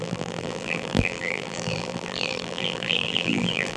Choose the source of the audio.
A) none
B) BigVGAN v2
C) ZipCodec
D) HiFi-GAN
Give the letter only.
B